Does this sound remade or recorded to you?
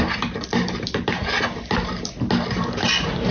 recorded